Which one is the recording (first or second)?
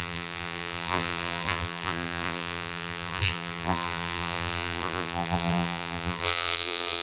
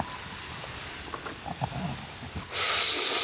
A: second